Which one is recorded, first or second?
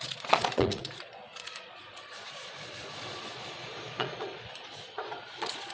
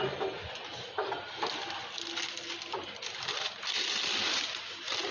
second